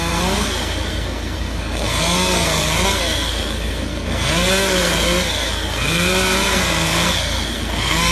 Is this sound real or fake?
fake